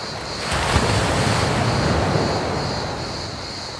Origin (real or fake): real